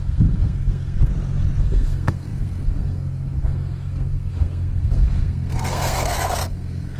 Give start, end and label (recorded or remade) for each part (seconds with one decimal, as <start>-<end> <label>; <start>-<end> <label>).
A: 0.0-1.1 remade; 1.1-1.6 recorded; 1.6-7.0 remade